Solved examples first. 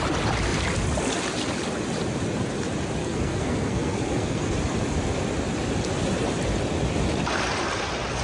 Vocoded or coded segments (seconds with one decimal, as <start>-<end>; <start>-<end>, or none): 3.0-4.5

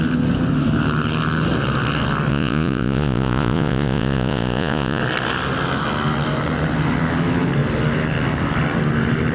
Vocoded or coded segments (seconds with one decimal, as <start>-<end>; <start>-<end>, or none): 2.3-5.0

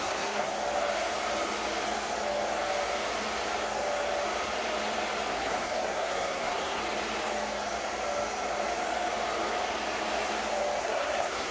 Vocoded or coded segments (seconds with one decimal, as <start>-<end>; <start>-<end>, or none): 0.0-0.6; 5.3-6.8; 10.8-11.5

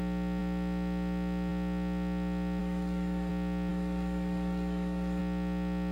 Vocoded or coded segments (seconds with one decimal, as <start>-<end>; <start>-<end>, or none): 2.6-3.3; 3.7-5.2

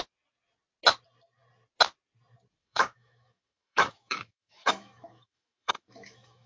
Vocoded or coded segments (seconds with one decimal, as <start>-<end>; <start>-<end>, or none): 2.6-6.5

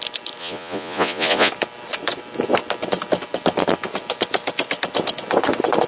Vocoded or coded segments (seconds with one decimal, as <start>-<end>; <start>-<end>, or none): 0.4-1.5

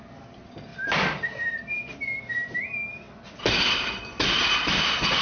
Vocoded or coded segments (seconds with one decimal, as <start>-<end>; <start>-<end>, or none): 0.7-2.6